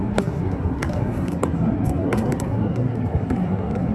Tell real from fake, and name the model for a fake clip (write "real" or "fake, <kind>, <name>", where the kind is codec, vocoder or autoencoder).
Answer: fake, codec, SNAC